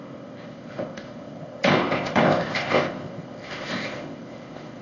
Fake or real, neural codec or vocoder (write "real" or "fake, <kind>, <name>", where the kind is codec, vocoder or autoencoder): fake, codec, ZipCodec